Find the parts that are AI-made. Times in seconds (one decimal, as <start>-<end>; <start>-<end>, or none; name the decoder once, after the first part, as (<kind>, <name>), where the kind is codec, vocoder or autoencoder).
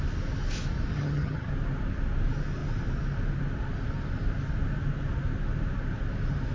0.9-1.5 (vocoder, HiFi-GAN)